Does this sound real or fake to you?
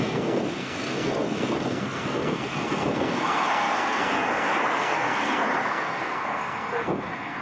fake